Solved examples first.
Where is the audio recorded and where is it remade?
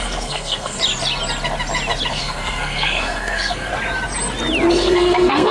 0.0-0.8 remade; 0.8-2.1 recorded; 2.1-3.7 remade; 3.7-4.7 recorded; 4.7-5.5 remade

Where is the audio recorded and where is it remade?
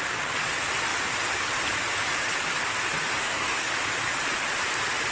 0.0-3.1 recorded; 3.1-3.7 remade; 3.7-5.1 recorded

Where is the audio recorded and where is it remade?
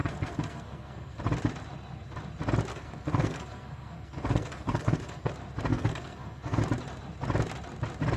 0.0-1.2 remade; 1.2-2.7 recorded; 2.7-5.3 remade; 5.3-5.7 recorded; 5.7-6.6 remade; 6.6-8.2 recorded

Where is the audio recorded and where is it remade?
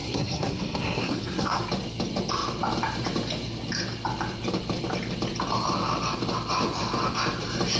0.0-1.6 remade; 1.6-7.8 recorded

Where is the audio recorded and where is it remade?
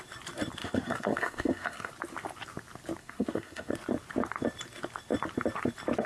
0.0-0.6 recorded; 0.6-1.9 remade; 1.9-3.0 recorded; 3.0-3.7 remade; 3.7-6.1 recorded